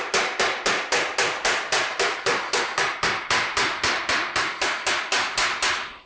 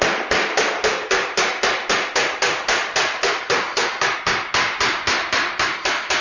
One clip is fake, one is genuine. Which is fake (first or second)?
second